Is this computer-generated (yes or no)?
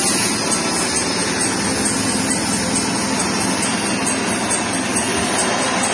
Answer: no